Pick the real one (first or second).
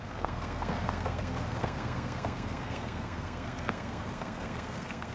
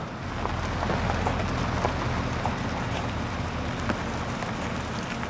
second